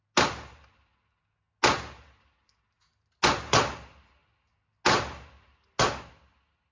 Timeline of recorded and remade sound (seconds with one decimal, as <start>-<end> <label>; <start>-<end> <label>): 0.0-6.7 recorded